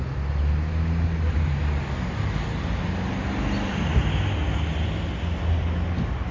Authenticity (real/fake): real